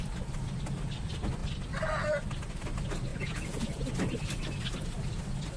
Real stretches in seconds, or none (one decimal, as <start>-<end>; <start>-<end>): 0.0-3.1; 3.8-5.6